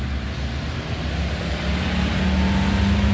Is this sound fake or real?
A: real